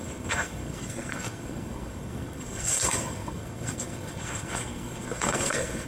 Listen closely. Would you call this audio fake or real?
fake